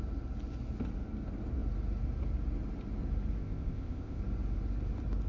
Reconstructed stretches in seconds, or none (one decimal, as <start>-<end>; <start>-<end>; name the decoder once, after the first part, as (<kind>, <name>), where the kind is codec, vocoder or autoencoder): 3.4-4.2 (codec, ZipCodec)